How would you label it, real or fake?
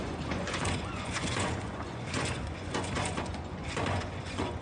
fake